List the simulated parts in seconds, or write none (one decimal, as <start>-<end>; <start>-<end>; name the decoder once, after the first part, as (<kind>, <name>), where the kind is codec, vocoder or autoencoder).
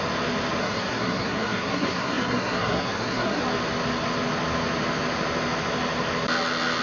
0.6-3.4 (codec, SNAC)